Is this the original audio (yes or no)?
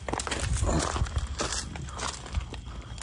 yes